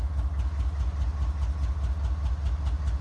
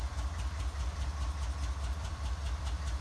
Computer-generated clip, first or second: second